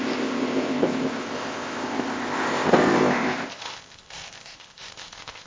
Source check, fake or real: fake